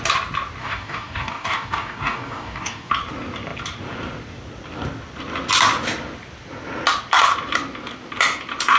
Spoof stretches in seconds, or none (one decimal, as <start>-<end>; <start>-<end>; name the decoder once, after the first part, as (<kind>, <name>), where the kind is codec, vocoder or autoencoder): 0.6-2.9 (codec, DAC)